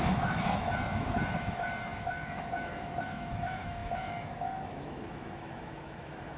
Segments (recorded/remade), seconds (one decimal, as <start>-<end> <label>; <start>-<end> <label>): 0.0-6.4 remade